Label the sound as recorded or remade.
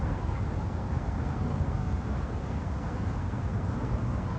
remade